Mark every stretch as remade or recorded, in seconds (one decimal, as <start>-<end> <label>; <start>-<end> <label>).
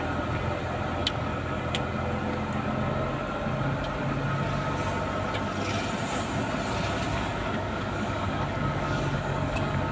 0.0-1.0 recorded; 1.0-1.6 remade; 1.6-7.1 recorded; 7.1-9.9 remade